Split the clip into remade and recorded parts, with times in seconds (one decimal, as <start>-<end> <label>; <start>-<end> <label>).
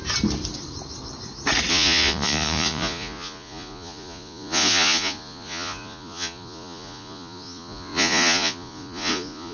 0.0-1.7 recorded; 1.7-9.5 remade